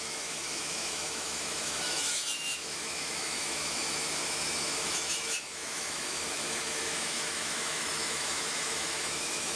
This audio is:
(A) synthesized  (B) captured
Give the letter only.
A